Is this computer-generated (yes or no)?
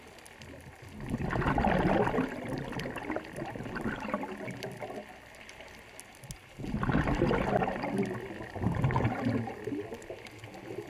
no